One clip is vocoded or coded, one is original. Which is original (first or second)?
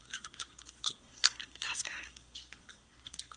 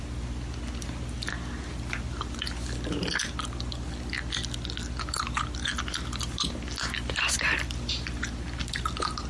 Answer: second